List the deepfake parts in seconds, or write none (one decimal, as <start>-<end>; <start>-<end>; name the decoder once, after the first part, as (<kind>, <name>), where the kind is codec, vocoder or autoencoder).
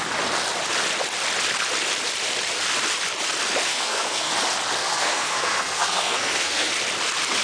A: 3.7-4.3 (codec, SNAC); 4.8-6.7